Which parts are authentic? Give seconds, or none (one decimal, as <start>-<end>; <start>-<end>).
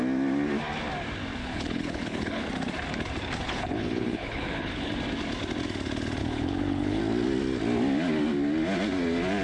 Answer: 0.0-1.4; 2.4-3.4; 4.9-6.2; 7.0-9.4